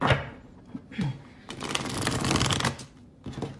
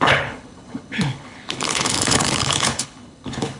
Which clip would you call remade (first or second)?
second